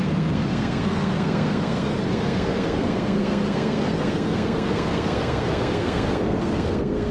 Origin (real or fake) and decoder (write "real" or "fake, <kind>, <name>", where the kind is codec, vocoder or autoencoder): fake, codec, SNAC